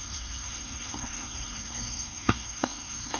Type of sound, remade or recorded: remade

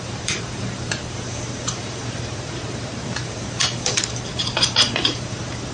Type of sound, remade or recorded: remade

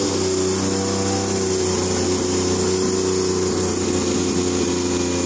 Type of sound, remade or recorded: recorded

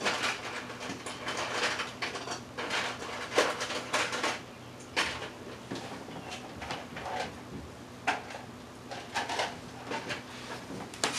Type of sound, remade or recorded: recorded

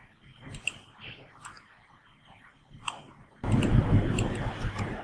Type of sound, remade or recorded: recorded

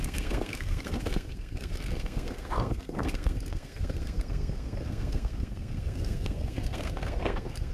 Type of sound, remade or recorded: remade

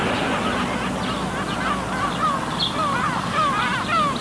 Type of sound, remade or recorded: recorded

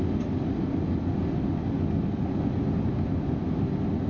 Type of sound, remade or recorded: recorded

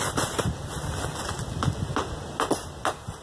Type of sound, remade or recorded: recorded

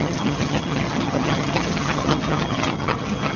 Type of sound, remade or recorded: remade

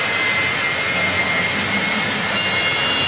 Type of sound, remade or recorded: recorded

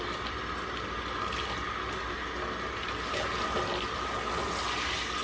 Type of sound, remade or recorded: recorded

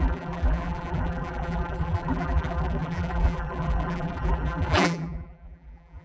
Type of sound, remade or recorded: remade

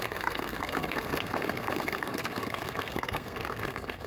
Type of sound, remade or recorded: remade